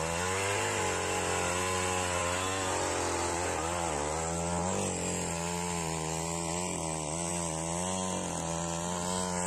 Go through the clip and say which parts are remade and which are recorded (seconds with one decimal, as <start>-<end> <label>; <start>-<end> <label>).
0.0-9.5 recorded